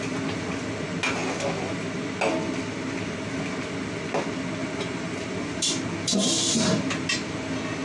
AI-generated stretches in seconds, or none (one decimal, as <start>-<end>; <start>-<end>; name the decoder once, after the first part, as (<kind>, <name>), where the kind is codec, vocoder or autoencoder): 4.6-6.9 (vocoder, BigVGAN v2)